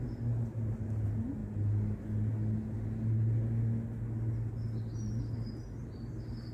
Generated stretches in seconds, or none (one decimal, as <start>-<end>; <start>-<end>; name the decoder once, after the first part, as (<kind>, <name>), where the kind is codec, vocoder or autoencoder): none